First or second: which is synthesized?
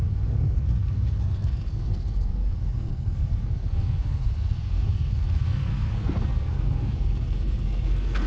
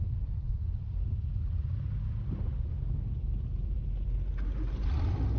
first